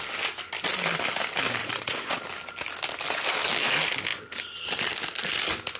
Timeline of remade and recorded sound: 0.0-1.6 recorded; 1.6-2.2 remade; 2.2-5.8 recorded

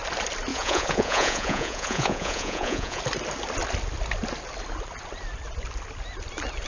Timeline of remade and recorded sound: 0.0-0.5 recorded; 0.5-3.0 remade; 3.0-6.7 recorded

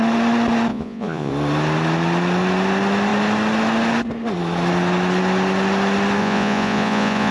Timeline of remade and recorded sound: 0.0-0.7 recorded; 0.7-1.3 remade; 1.3-6.2 recorded; 6.2-7.3 remade